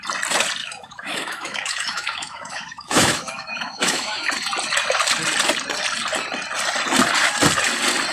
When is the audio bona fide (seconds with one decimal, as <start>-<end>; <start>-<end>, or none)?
0.0-0.6; 4.3-8.1